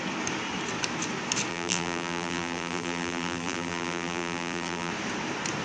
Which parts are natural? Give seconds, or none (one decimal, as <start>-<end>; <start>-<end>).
0.0-1.5; 4.9-5.6